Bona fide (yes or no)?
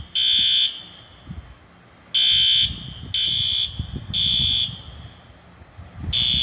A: yes